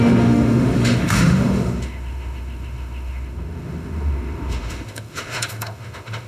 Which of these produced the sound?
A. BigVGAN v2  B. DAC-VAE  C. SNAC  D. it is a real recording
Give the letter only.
B